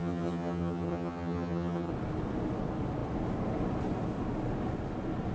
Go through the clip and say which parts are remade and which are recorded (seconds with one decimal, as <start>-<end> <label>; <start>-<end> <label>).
0.0-1.9 remade; 1.9-5.3 recorded